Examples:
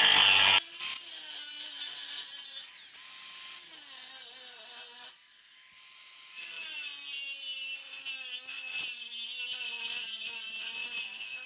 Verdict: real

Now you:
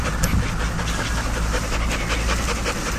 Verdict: real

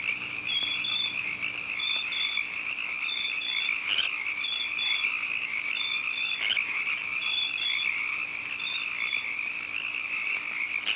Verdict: real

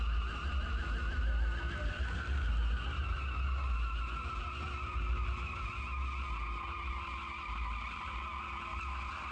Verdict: real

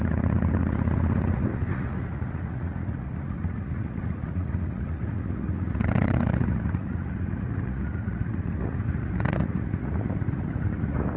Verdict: fake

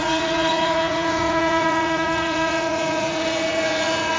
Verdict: fake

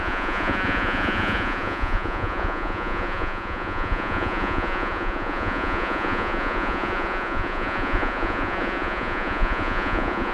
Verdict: fake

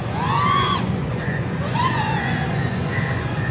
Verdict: fake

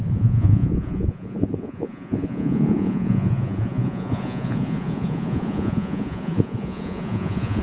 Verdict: fake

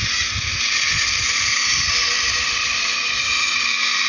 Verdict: real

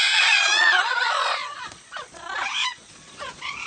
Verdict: fake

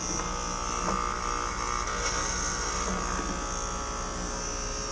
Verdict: real